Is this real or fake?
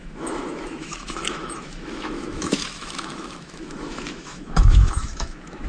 fake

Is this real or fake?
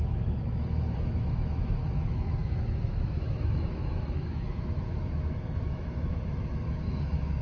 fake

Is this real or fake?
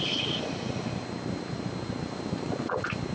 real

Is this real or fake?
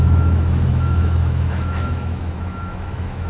fake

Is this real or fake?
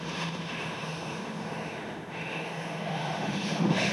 fake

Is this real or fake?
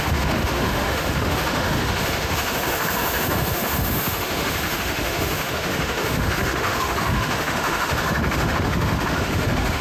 fake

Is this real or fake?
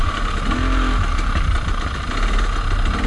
real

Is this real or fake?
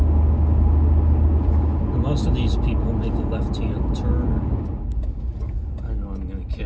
real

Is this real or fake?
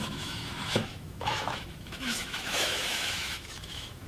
fake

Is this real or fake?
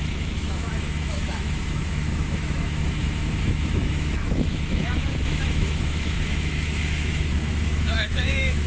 fake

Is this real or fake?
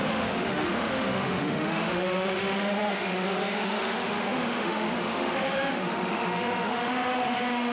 fake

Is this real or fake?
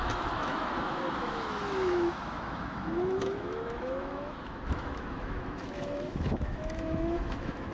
fake